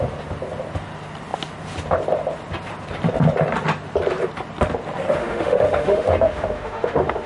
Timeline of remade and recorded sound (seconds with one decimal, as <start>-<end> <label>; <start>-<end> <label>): 0.0-5.2 recorded; 5.2-7.3 remade